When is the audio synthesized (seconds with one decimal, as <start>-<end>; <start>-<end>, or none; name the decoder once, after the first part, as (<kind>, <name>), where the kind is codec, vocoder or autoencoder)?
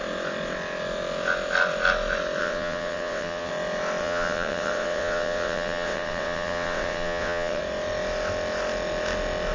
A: 2.4-3.5 (vocoder, WaveNeXt); 4.0-7.6